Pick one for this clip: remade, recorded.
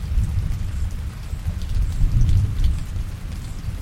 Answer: remade